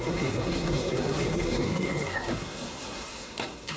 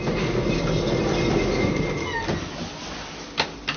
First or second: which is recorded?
second